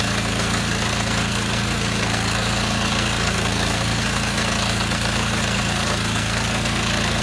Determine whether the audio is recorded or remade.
remade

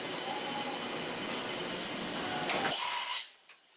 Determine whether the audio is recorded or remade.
recorded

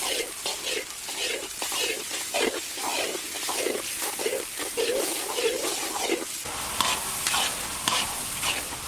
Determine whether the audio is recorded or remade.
remade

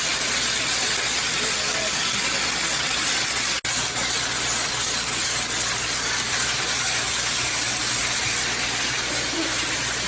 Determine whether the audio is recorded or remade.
recorded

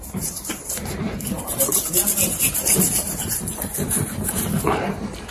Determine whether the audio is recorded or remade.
remade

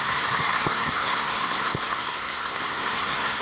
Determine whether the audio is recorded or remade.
remade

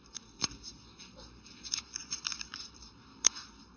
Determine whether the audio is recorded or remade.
remade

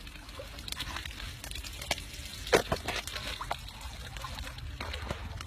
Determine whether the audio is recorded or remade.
recorded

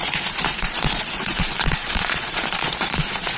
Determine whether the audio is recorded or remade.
remade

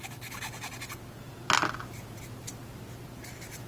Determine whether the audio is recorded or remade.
recorded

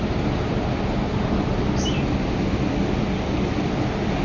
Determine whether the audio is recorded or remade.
recorded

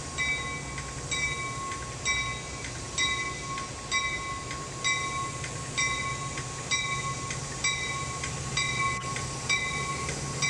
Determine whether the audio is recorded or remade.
recorded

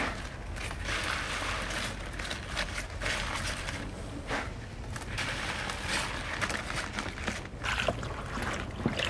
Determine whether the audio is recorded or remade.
recorded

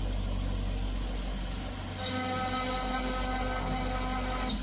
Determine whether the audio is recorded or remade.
recorded